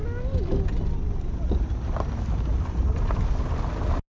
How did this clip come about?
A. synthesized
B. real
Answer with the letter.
B